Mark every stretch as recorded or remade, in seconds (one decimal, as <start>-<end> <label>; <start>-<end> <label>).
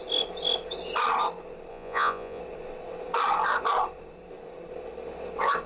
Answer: 0.0-1.7 recorded; 1.7-2.4 remade; 2.4-5.7 recorded